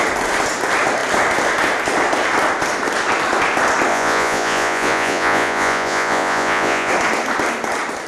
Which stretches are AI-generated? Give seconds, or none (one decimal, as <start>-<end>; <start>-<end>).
3.9-6.9